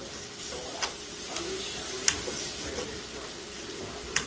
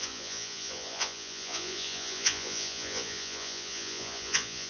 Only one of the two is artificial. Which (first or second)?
second